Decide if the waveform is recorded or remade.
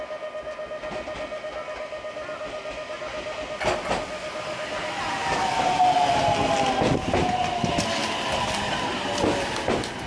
recorded